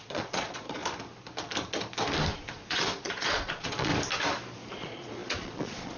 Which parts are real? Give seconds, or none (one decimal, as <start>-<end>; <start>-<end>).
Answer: 0.8-2.4; 3.9-4.7